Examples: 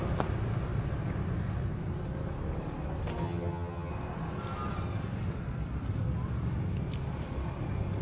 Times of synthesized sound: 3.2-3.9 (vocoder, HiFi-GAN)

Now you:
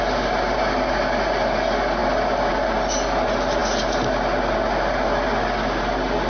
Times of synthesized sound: none

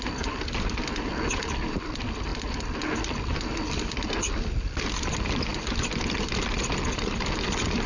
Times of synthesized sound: none

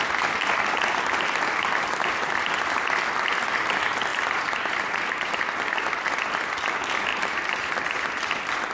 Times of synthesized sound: 4.1-5.3 (vocoder, BigVGAN v2); 7.1-7.7

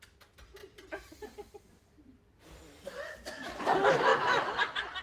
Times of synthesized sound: 0.6-3.6 (vocoder, BigVGAN v2)